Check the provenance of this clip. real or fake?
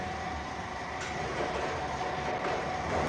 real